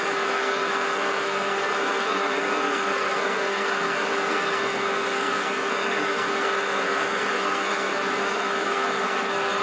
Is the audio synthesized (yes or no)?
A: yes